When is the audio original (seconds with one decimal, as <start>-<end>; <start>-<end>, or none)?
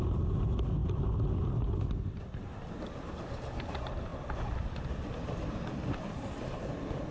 0.0-0.8; 3.3-4.1; 6.3-7.1